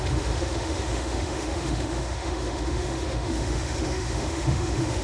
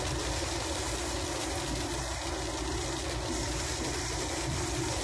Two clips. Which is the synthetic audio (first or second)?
first